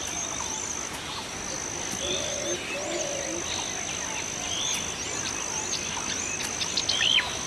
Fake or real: real